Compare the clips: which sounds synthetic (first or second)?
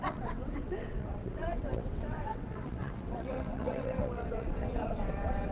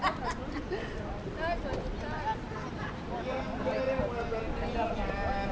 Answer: first